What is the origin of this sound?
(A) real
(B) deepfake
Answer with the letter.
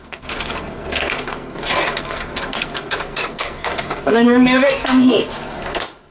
B